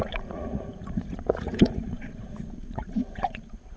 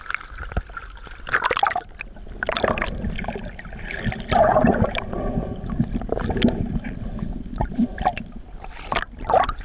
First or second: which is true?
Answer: second